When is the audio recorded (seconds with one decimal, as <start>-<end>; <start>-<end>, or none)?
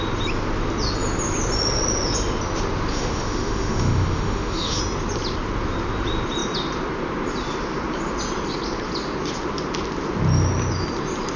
0.0-2.9; 4.8-11.4